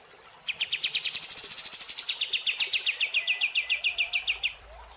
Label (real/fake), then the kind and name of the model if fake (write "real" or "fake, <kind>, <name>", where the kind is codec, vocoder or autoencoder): real